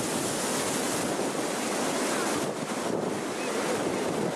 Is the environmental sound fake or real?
real